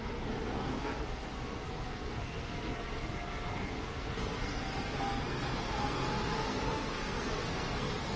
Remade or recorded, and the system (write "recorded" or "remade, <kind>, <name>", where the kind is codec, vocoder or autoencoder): remade, codec, SNAC